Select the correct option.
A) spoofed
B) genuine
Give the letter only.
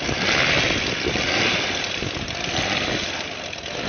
B